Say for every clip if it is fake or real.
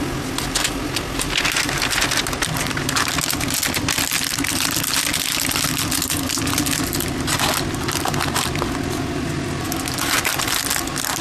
real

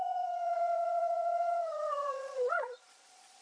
fake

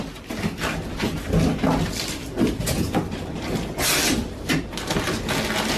real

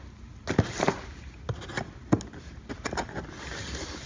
real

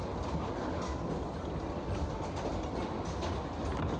real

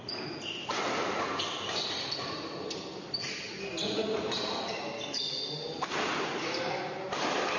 real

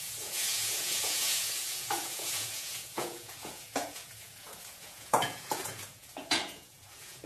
fake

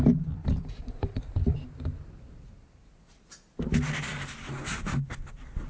real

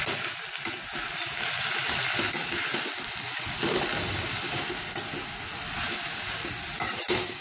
real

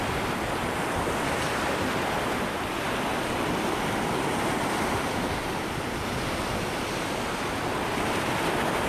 real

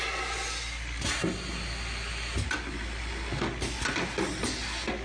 real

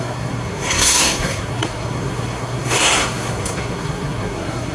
fake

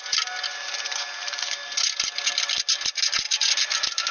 real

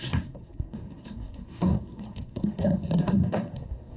fake